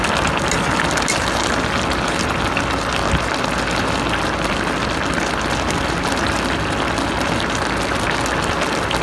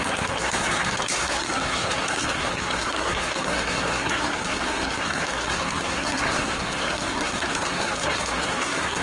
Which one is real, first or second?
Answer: first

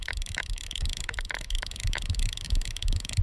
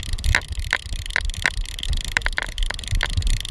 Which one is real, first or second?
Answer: second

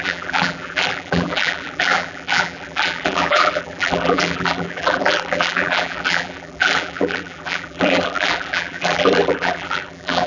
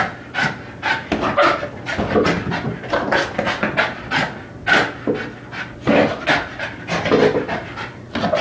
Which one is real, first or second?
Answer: second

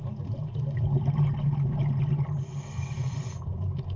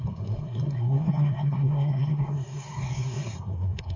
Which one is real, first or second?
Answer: first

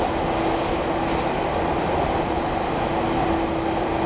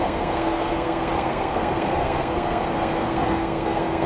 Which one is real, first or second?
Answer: first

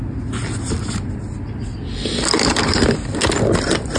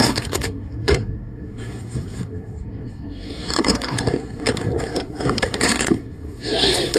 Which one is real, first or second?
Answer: first